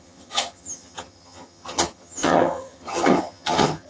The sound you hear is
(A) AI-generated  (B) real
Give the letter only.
A